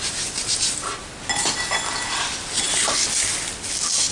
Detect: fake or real real